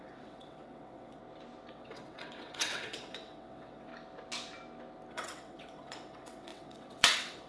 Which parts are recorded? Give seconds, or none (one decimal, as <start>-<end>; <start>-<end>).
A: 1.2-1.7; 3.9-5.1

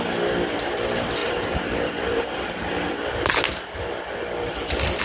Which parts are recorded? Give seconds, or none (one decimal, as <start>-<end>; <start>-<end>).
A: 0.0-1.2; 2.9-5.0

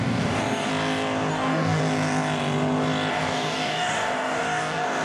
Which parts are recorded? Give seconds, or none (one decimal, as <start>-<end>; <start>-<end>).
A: 0.7-1.3; 1.8-3.1

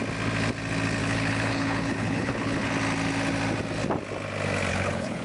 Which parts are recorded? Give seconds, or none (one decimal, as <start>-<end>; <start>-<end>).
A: 0.0-1.0; 2.7-4.7